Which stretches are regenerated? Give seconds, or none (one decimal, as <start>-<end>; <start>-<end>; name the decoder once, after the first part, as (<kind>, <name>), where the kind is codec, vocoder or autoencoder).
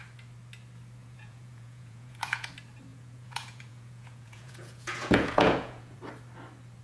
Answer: 1.0-2.5 (vocoder, Vocos); 2.9-6.0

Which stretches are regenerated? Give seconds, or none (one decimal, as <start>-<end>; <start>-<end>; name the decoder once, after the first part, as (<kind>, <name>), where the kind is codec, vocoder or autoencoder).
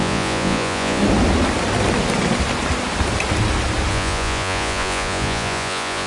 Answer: 0.0-1.0 (vocoder, Vocos); 3.9-6.1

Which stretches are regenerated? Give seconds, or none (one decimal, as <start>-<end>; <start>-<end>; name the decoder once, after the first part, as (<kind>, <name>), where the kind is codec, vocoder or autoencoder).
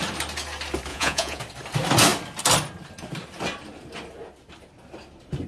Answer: 0.9-1.4 (vocoder, Vocos)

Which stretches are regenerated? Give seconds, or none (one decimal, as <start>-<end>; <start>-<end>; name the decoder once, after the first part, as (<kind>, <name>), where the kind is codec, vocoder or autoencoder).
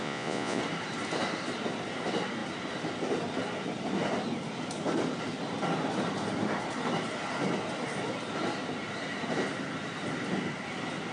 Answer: 0.0-0.6 (vocoder, Vocos)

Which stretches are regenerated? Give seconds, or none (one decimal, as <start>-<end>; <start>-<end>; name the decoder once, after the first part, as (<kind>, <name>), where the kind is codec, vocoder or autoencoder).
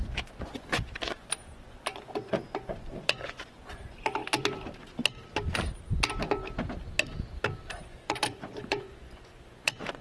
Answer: 0.0-4.2 (vocoder, Vocos); 7.8-10.0